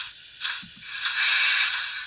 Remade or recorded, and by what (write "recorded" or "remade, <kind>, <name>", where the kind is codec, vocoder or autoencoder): recorded